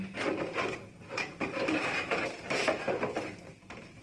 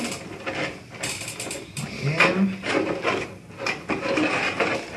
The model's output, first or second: first